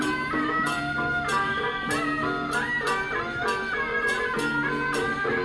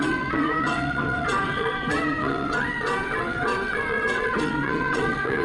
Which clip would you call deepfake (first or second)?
second